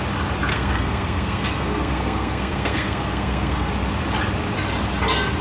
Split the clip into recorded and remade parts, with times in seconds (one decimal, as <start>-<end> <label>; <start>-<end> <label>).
0.0-0.5 recorded; 0.5-3.7 remade; 3.7-5.4 recorded